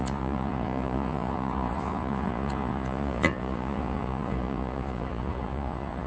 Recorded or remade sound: remade